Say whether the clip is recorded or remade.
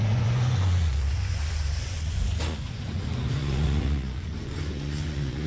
remade